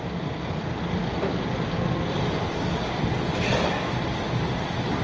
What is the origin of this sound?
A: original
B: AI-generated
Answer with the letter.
A